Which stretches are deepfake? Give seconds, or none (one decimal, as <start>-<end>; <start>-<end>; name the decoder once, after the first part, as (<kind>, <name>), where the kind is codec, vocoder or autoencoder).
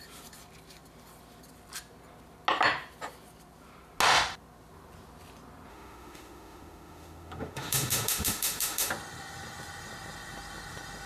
5.7-8.9 (autoencoder, DAC-VAE)